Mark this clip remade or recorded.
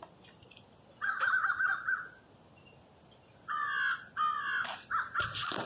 recorded